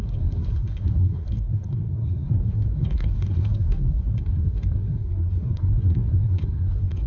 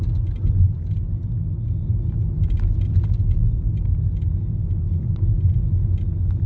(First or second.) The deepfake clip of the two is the first